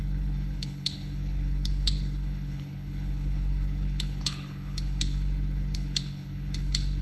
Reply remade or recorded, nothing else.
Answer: remade